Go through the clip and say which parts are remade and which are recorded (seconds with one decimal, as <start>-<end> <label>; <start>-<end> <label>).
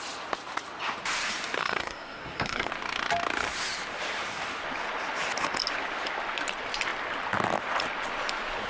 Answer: 0.0-1.6 recorded; 1.6-2.7 remade; 2.7-8.7 recorded